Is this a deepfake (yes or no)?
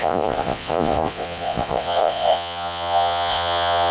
yes